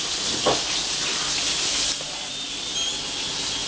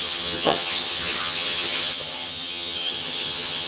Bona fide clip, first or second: first